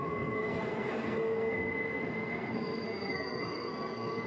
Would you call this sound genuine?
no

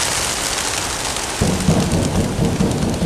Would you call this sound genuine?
yes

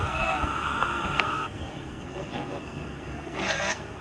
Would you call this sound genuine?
no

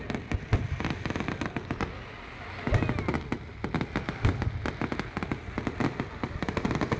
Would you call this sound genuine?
yes